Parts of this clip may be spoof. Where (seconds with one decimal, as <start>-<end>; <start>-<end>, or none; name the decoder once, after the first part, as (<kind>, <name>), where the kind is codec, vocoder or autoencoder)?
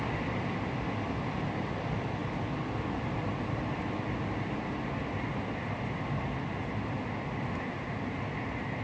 none